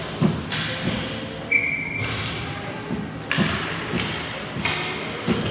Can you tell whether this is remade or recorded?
recorded